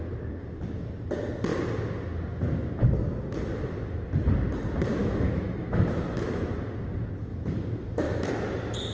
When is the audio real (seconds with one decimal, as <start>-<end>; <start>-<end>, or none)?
0.0-5.0; 6.5-7.3; 8.3-8.9